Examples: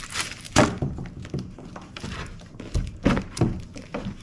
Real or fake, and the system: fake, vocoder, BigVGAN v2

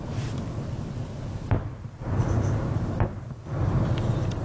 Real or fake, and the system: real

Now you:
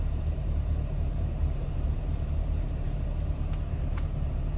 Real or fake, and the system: fake, vocoder, BigVGAN v2